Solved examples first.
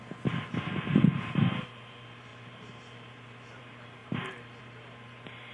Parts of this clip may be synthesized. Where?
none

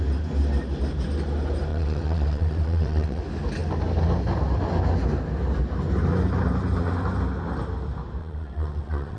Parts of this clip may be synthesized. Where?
1.7-3.2; 8.2-9.2

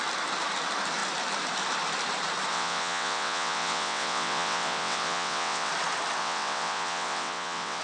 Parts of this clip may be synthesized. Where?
2.5-5.7; 6.2-7.8

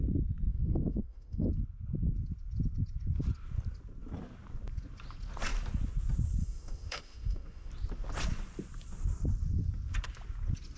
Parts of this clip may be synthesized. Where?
0.5-1.5; 6.4-7.7

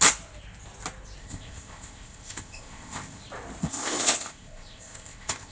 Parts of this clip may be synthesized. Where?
1.2-3.2; 3.6-5.5

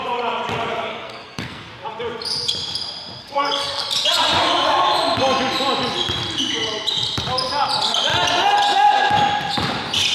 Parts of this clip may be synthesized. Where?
0.9-1.7; 3.2-3.8

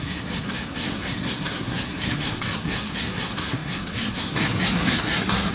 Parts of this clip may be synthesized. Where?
0.0-5.5

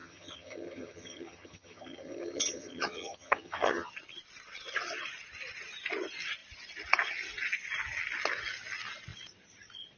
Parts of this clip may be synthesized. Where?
0.0-3.9